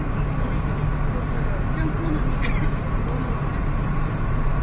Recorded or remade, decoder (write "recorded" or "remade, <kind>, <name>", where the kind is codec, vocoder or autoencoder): recorded